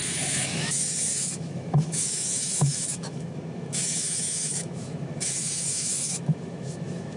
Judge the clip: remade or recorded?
remade